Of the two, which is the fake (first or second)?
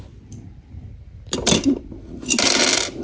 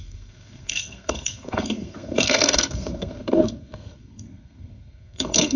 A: second